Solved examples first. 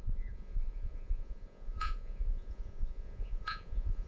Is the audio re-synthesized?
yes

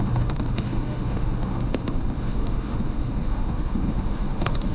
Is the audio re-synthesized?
yes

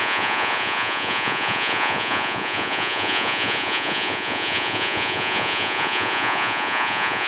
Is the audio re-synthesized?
yes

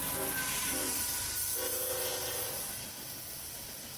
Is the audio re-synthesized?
yes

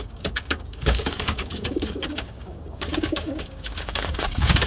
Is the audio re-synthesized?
yes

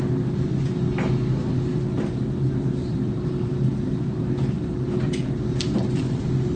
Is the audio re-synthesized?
no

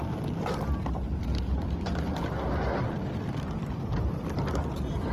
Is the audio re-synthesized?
no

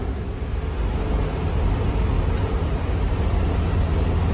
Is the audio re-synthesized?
no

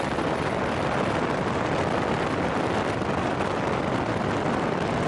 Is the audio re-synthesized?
no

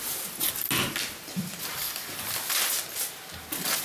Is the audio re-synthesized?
no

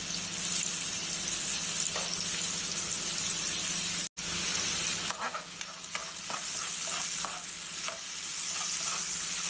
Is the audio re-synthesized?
no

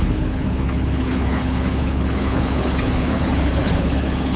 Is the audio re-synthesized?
yes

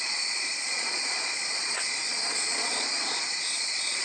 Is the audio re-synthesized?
yes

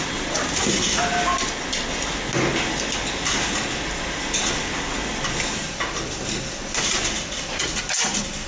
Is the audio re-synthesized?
no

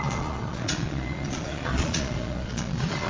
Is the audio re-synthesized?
yes